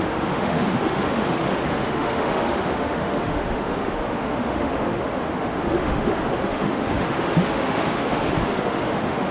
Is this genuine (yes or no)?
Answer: no